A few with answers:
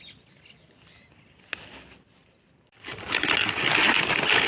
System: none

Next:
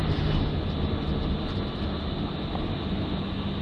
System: none